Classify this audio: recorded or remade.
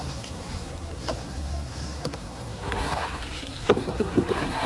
remade